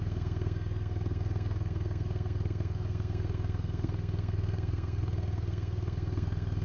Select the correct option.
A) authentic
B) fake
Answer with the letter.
B